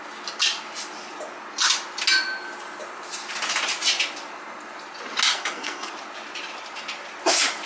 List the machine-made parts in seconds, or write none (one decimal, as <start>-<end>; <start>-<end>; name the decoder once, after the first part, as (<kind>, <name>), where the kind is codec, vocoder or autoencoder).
5.3-5.9 (codec, SNAC)